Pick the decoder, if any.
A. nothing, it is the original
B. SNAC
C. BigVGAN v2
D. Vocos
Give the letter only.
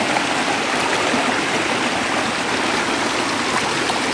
A